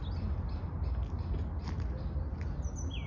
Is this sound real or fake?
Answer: real